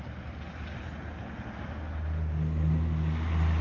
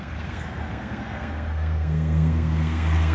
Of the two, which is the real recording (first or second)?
first